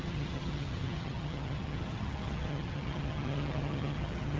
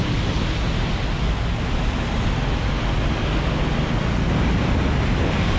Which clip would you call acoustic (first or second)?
second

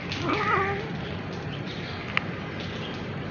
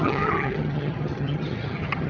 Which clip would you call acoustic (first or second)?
first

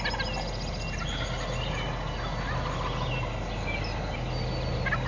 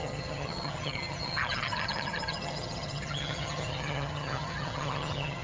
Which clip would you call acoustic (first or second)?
first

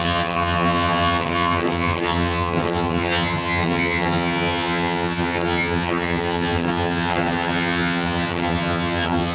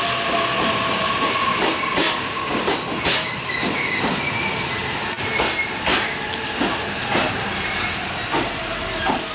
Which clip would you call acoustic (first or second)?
second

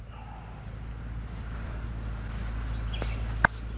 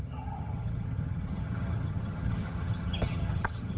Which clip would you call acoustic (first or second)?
first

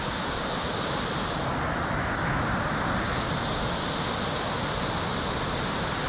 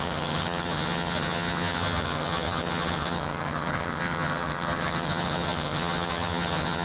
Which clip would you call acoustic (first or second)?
first